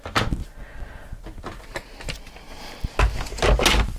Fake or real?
real